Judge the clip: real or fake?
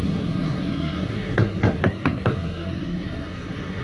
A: fake